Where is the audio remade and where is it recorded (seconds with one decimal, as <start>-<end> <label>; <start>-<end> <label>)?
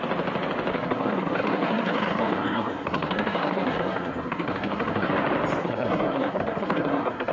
0.0-0.7 recorded; 0.7-5.1 remade; 5.1-5.6 recorded; 5.6-7.3 remade